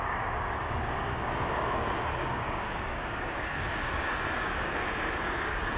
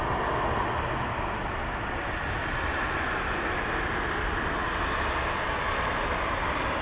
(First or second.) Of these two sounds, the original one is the second